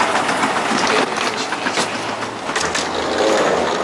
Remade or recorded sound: recorded